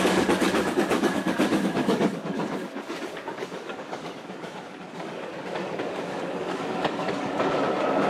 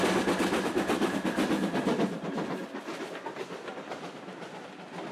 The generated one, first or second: first